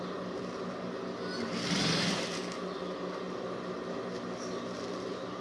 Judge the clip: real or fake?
real